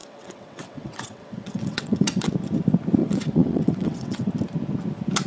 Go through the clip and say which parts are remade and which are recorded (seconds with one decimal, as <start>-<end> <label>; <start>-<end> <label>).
0.0-2.3 remade; 2.3-3.0 recorded; 3.0-4.3 remade; 4.3-5.3 recorded

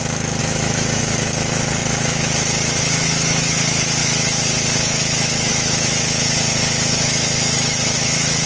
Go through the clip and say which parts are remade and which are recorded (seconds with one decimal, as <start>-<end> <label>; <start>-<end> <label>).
0.0-8.5 remade

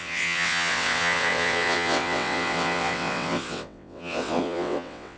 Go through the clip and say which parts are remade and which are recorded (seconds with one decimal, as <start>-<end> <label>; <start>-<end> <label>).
0.0-5.2 remade

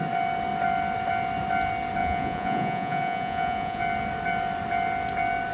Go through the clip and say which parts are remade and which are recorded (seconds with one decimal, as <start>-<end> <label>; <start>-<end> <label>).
0.0-2.0 recorded; 2.0-3.8 remade; 3.8-5.5 recorded

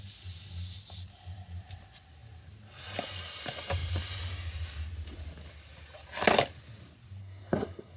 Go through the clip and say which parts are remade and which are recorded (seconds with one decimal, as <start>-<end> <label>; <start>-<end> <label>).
0.0-7.2 recorded; 7.2-8.0 remade